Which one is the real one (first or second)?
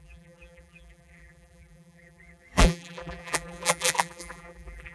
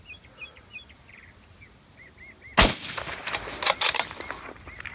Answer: second